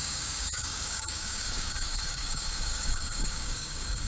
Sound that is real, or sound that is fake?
fake